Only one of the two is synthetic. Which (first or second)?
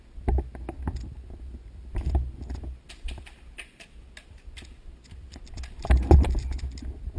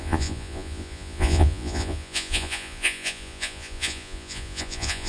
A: second